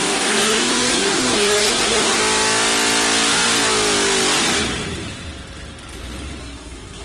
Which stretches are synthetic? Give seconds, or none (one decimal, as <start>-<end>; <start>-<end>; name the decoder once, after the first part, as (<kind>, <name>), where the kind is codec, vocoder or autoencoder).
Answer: 0.0-2.2 (codec, SNAC); 6.4-7.0